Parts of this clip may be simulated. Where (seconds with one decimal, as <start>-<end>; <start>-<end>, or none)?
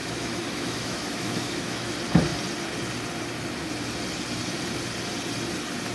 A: 0.0-1.9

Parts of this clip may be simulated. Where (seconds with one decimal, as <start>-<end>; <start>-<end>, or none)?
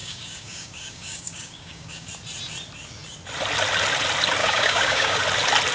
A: 0.0-2.1; 4.4-5.2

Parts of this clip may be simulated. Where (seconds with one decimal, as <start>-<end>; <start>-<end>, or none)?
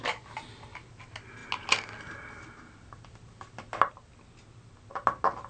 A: none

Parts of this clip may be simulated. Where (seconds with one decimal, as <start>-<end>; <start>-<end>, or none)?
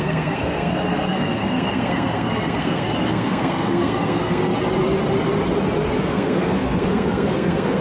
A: 0.0-4.5; 6.0-7.8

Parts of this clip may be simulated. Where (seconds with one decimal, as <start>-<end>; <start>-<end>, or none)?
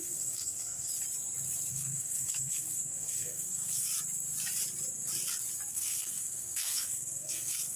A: 0.0-0.9; 1.7-3.9; 5.7-7.8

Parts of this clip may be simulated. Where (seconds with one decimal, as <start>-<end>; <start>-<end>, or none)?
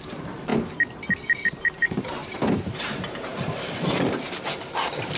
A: 0.0-0.5; 1.4-2.2; 2.8-5.2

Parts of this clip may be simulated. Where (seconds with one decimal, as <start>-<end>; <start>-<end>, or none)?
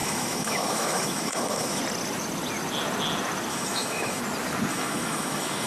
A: 0.0-1.8; 3.5-4.2; 4.7-5.7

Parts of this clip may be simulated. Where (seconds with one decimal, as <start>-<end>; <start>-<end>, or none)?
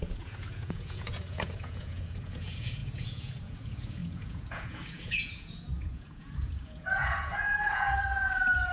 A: 0.0-8.7